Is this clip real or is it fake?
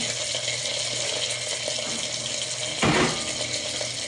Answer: real